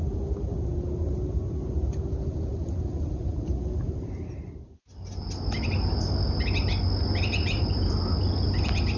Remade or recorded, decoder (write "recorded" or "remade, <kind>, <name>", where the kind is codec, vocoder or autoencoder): recorded